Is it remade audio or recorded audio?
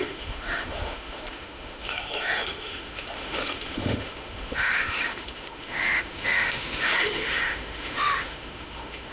remade